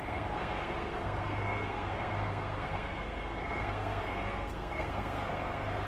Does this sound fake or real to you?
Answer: fake